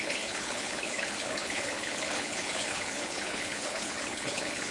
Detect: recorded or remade remade